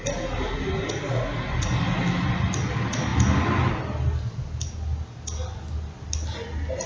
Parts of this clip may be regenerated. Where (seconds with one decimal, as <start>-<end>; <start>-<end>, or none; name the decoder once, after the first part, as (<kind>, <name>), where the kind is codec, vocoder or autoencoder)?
none